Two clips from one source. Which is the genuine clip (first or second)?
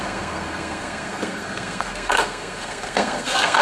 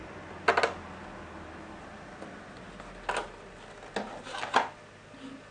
second